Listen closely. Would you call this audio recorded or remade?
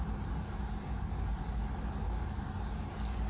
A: recorded